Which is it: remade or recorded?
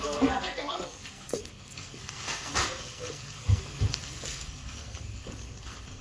remade